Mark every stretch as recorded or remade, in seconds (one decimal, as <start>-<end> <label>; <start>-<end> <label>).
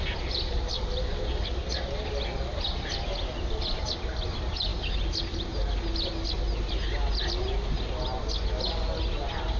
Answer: 0.0-9.6 recorded